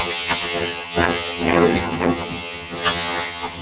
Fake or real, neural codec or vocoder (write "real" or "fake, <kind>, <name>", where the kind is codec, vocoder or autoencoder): fake, vocoder, HiFi-GAN